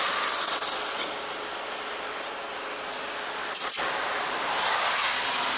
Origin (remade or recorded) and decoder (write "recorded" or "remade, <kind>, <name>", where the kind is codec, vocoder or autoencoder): recorded